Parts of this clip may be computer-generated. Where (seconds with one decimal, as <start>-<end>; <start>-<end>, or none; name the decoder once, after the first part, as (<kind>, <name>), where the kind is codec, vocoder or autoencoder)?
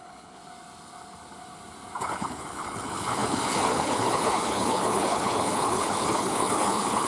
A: 0.0-0.4 (codec, HILCodec); 2.0-7.1